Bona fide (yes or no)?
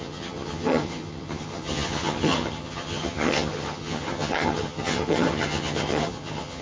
no